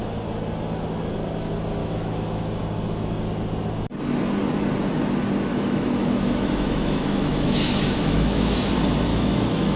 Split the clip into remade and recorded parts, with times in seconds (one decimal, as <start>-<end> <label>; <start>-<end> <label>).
0.0-1.8 recorded; 1.8-2.6 remade; 2.6-5.5 recorded; 5.5-8.7 remade; 8.7-9.1 recorded; 9.1-9.8 remade